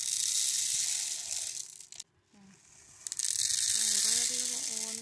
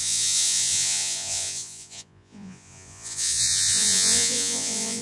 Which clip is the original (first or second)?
first